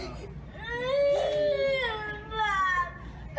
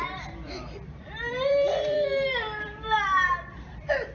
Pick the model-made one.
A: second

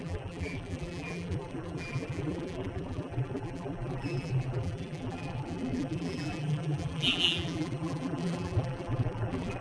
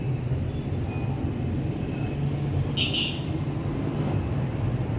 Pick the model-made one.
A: first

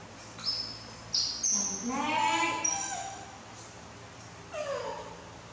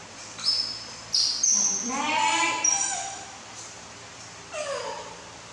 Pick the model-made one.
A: second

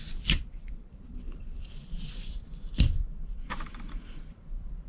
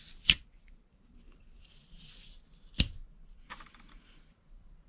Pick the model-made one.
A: first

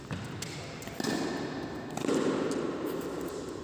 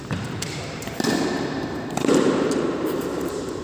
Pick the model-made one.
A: second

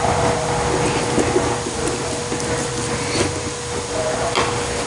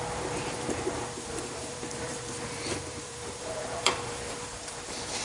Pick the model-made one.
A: second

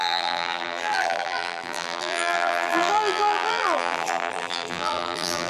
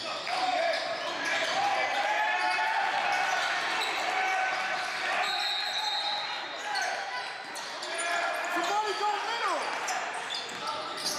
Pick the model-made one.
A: first